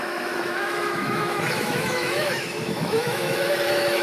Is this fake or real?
fake